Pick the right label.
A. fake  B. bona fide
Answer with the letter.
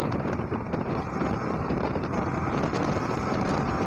A